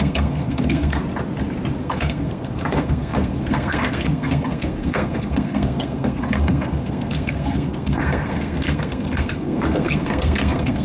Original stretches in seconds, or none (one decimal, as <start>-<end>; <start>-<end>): 1.0-1.8